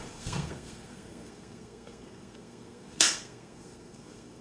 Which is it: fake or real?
fake